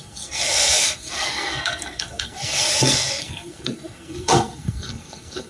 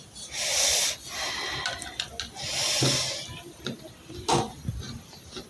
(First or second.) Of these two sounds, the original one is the second